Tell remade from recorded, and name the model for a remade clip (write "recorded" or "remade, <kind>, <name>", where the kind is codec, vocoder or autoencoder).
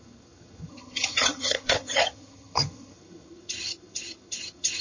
remade, vocoder, HiFi-GAN